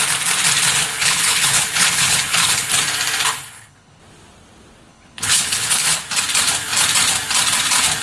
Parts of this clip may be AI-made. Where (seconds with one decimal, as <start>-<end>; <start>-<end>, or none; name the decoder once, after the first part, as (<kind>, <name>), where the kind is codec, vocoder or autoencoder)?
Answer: 0.9-2.7 (codec, HILCodec); 3.3-4.0; 4.9-6.0